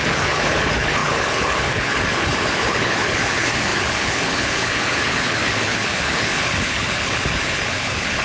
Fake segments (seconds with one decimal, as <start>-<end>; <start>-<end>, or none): 0.0-8.2